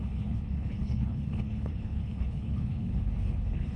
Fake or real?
fake